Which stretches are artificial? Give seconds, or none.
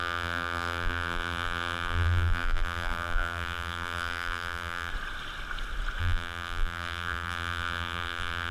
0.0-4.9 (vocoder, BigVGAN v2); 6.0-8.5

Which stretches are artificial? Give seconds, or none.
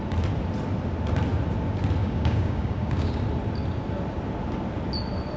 2.0-3.2 (codec, DAC)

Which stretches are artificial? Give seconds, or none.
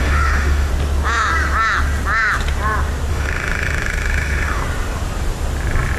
0.0-0.7 (autoencoder, DAC-VAE); 3.1-4.6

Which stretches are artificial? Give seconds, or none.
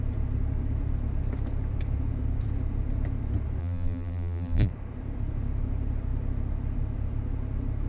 3.6-4.7 (vocoder, BigVGAN v2)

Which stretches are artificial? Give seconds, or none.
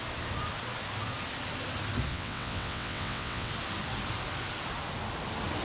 2.1-3.5 (vocoder, WaveNeXt)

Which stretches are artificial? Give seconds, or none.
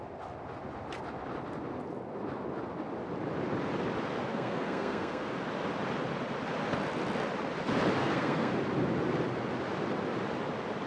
4.3-5.3 (codec, SNAC); 8.0-8.5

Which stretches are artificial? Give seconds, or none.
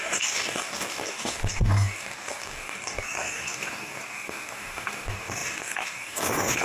0.0-6.6 (codec, DAC)